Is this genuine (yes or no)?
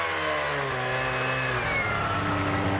yes